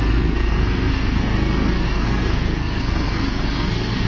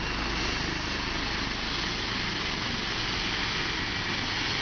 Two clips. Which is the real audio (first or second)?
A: second